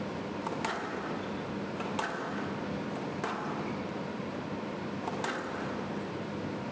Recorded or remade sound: recorded